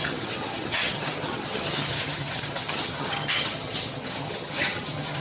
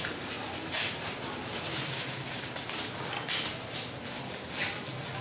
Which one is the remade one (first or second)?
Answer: first